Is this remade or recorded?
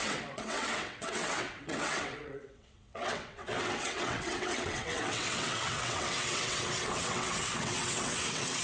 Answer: remade